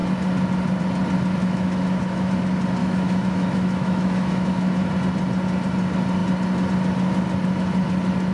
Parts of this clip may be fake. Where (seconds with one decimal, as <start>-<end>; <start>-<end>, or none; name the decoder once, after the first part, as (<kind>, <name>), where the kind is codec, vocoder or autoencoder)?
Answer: 1.4-2.3 (autoencoder, DAC-VAE); 2.8-4.9